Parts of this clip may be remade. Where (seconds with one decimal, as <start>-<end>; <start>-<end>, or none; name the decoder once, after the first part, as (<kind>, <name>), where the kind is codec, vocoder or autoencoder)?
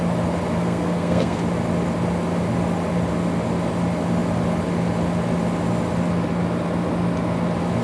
0.6-1.4 (codec, SNAC)